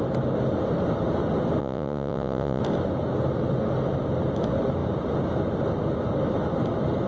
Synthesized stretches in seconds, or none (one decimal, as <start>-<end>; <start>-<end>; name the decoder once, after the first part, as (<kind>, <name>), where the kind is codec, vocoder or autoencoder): 1.6-2.6 (vocoder, Vocos)